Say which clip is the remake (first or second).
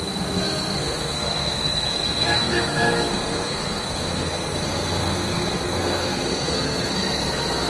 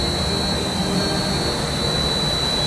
first